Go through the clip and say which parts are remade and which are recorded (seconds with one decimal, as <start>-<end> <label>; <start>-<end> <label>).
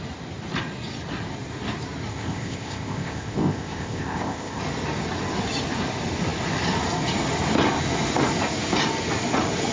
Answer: 0.0-2.1 recorded; 2.1-4.6 remade; 4.6-9.7 recorded